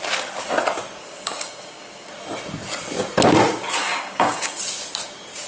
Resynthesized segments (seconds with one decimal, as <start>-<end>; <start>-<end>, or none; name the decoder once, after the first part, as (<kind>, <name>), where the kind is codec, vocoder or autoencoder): 1.0-2.1 (codec, DAC); 3.8-4.6